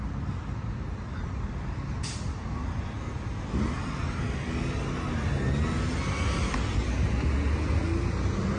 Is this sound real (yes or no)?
yes